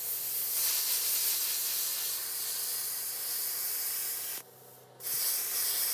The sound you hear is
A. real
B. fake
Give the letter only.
A